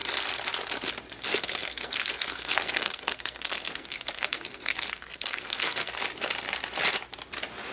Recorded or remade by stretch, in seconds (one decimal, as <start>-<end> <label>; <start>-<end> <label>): 0.0-1.3 recorded; 1.3-5.9 remade; 5.9-7.7 recorded